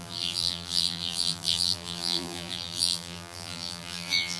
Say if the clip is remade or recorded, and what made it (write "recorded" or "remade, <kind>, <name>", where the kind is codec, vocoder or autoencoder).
remade, vocoder, BigVGAN v2